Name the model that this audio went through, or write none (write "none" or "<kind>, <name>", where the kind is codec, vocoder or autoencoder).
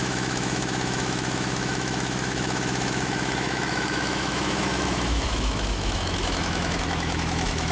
autoencoder, DAC-VAE